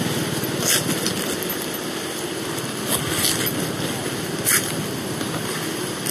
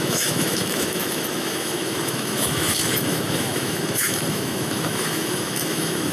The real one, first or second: first